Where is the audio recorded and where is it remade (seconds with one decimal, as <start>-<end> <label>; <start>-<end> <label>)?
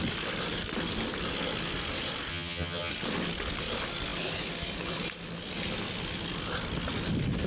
0.0-2.3 recorded; 2.3-2.9 remade; 2.9-7.5 recorded